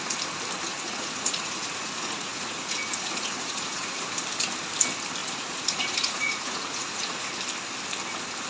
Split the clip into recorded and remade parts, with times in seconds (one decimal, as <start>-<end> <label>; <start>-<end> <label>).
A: 0.0-0.7 recorded; 0.7-4.1 remade; 4.1-5.2 recorded; 5.2-7.3 remade; 7.3-8.5 recorded